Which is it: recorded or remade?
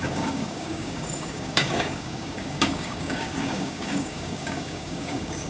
remade